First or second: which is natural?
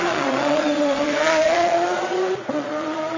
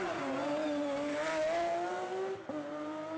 second